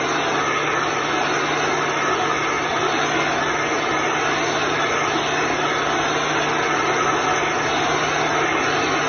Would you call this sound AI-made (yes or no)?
no